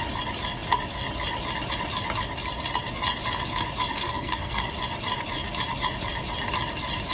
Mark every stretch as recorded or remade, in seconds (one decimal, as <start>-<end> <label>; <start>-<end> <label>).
0.0-3.9 recorded; 3.9-4.7 remade; 4.7-7.1 recorded